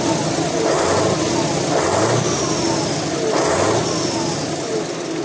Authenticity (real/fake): real